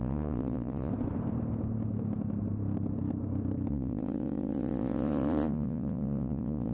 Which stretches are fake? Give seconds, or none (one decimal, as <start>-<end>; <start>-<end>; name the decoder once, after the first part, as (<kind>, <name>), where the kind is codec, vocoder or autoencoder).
0.0-0.9 (vocoder, Vocos); 3.7-6.7